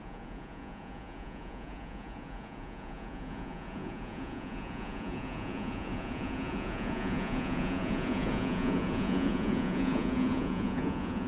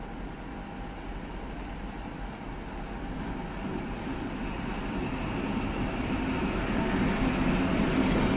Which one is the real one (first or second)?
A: second